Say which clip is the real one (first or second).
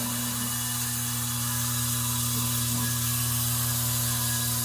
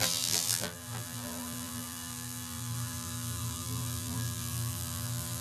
first